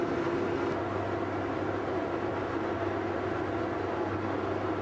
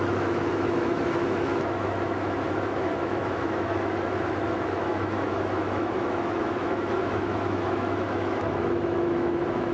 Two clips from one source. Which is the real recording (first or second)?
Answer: first